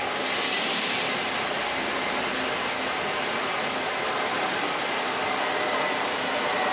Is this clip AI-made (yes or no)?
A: no